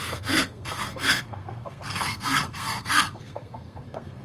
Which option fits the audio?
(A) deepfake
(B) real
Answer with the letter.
A